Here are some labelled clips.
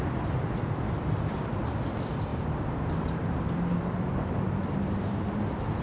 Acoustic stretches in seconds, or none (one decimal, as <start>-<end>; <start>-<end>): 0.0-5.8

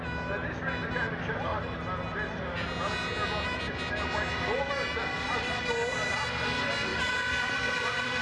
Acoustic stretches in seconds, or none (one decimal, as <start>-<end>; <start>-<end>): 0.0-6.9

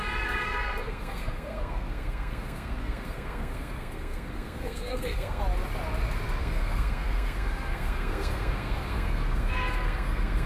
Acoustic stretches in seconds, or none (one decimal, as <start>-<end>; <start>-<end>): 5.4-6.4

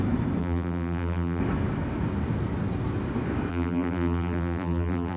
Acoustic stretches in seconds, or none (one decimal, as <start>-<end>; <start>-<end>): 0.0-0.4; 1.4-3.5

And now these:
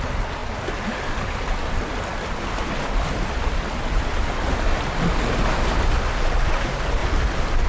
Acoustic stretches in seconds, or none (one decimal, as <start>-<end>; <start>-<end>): 0.0-7.7